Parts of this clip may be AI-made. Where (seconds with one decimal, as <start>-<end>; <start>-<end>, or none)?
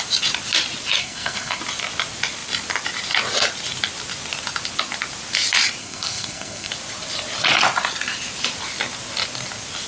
1.0-1.6; 5.8-6.7